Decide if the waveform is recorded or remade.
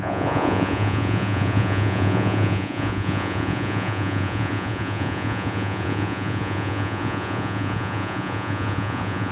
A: remade